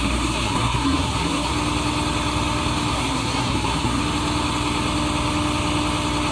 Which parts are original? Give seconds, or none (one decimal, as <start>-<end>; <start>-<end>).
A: 1.5-2.9; 4.0-6.3